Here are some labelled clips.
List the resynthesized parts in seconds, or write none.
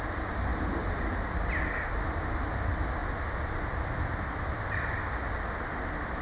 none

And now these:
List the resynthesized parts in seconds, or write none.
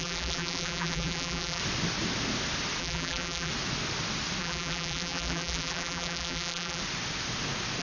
0.0-1.6 (vocoder, BigVGAN v2); 2.8-3.5; 4.4-6.8